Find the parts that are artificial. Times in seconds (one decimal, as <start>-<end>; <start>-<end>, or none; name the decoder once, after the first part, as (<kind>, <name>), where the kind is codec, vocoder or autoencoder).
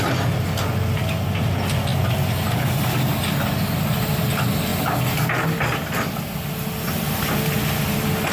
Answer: none